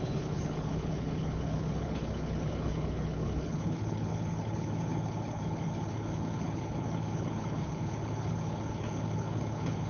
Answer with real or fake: fake